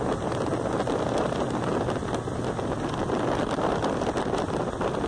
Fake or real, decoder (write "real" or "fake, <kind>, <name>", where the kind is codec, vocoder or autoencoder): real